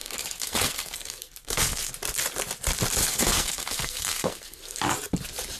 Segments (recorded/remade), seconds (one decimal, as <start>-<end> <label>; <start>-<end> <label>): 0.0-1.9 remade; 1.9-3.0 recorded; 3.0-4.8 remade; 4.8-5.6 recorded